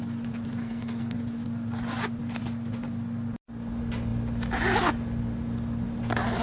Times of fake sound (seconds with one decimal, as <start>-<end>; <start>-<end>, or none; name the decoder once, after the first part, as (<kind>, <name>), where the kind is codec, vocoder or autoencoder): 0.6-1.2 (codec, SNAC)